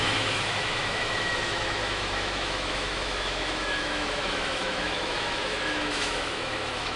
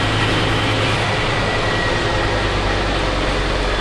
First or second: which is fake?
first